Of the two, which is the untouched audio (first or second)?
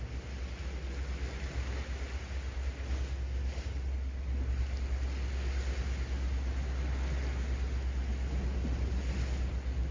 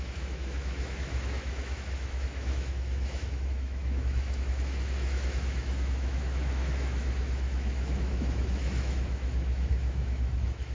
first